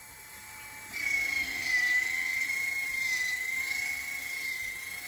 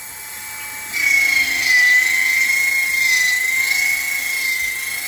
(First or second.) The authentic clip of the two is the second